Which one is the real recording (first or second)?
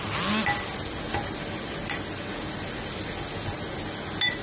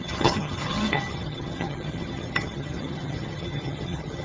first